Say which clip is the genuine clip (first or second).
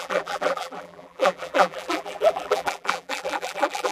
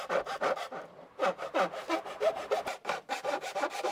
second